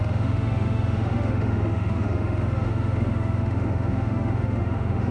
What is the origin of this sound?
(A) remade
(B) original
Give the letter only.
A